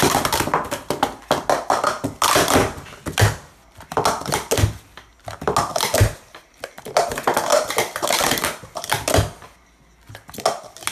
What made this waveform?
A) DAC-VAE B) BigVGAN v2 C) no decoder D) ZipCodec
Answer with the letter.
C